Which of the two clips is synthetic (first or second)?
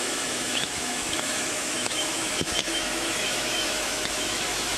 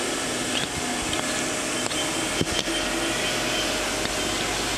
first